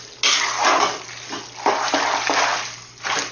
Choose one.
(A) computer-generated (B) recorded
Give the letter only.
B